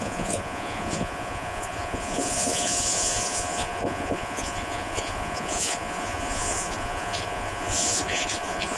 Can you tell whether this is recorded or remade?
remade